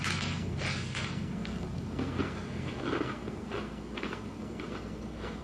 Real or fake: fake